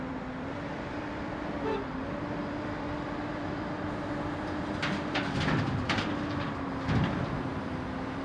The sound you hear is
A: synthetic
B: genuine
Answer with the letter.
A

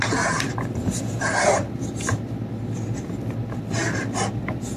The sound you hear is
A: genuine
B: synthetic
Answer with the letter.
A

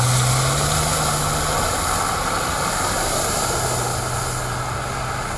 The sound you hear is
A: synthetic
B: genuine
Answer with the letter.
B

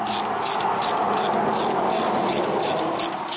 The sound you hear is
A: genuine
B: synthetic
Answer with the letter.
A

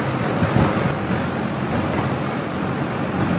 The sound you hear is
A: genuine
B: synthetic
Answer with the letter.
A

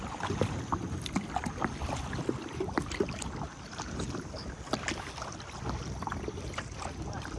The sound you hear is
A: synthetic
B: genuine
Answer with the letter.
B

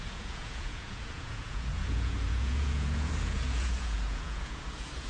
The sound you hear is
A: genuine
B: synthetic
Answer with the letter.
B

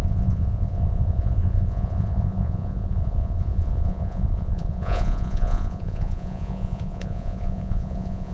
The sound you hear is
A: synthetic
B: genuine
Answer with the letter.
A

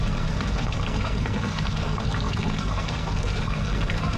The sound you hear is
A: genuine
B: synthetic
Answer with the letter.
B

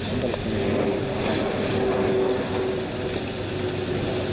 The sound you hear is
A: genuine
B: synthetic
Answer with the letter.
A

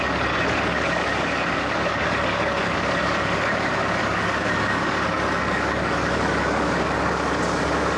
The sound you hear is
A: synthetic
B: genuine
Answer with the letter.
A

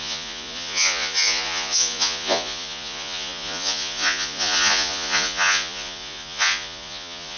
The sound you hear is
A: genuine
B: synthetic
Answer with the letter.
B